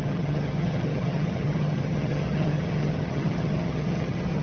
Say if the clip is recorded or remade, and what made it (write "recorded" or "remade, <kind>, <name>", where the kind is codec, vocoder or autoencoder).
remade, vocoder, HiFi-GAN